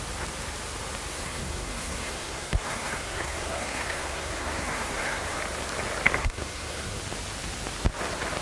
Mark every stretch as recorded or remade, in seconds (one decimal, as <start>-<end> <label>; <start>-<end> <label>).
0.0-1.1 recorded; 1.1-5.4 remade; 5.4-6.2 recorded; 6.2-7.0 remade; 7.0-8.4 recorded